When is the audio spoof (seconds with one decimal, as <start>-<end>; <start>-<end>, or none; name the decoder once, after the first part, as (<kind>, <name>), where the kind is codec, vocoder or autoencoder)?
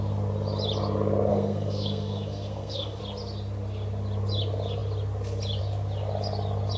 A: 1.3-3.0 (codec, SNAC)